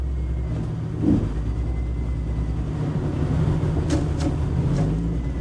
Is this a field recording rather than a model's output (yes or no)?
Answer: yes